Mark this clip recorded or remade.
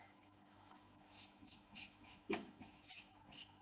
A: remade